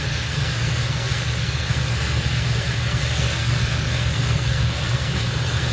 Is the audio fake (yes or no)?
yes